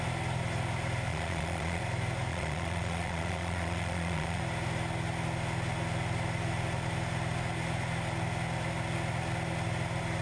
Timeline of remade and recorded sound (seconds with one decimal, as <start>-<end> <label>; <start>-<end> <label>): 0.0-1.1 recorded; 1.1-1.8 remade; 1.8-2.3 recorded; 2.3-4.4 remade; 4.4-10.2 recorded